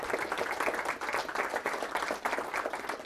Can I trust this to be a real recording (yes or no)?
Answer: yes